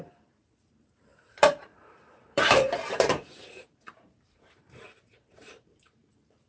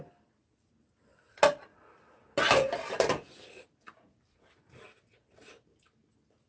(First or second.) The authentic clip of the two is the second